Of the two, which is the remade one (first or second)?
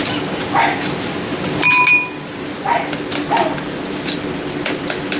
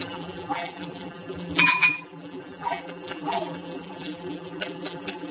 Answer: second